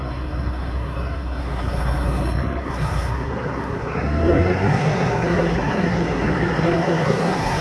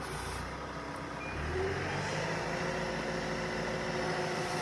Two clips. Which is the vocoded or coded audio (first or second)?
first